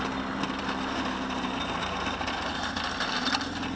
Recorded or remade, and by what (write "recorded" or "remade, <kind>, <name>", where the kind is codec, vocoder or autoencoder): recorded